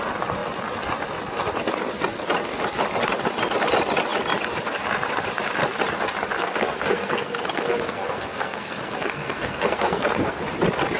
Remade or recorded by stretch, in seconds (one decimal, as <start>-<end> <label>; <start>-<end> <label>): 0.0-6.4 recorded; 6.4-10.4 remade; 10.4-11.0 recorded

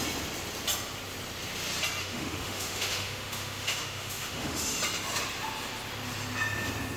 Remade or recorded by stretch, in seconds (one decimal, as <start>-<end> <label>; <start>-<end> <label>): 0.0-2.0 recorded; 2.0-4.8 remade; 4.8-7.0 recorded

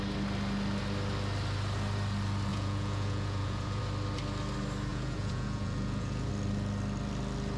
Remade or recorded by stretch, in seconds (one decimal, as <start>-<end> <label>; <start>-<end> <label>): 0.0-2.5 recorded; 2.5-3.8 remade; 3.8-4.9 recorded; 4.9-6.3 remade; 6.3-7.6 recorded

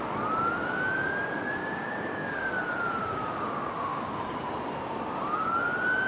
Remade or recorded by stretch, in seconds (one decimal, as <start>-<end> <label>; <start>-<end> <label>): 0.0-1.6 recorded; 1.6-2.5 remade; 2.5-3.0 recorded; 3.0-4.4 remade; 4.4-6.1 recorded

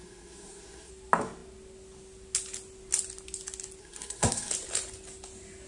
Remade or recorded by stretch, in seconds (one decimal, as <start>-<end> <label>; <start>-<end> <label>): 0.0-0.9 remade; 0.9-3.8 recorded; 3.8-4.5 remade; 4.5-5.7 recorded